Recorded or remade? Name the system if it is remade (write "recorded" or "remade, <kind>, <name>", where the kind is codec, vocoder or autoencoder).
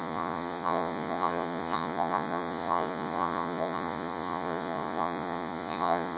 remade, vocoder, Vocos